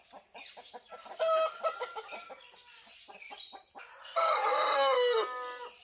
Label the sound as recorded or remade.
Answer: recorded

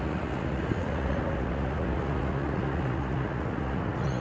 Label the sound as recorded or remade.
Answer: remade